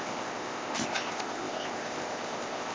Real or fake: fake